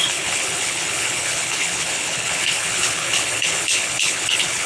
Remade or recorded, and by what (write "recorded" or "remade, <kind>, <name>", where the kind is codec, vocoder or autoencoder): remade, codec, HILCodec